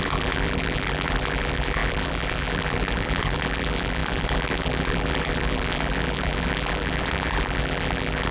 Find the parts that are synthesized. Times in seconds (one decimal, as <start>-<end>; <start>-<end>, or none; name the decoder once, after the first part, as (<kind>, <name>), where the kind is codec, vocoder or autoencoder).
0.0-8.3 (vocoder, BigVGAN v2)